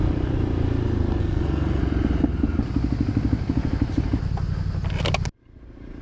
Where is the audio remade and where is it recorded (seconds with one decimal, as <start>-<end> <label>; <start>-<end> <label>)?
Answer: 0.0-1.2 recorded; 1.2-1.8 remade; 1.8-6.0 recorded